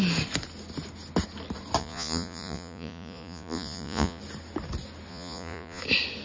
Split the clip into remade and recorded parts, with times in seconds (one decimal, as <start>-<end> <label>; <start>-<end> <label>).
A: 0.0-1.8 recorded; 1.8-4.2 remade; 4.2-5.1 recorded; 5.1-5.8 remade; 5.8-6.2 recorded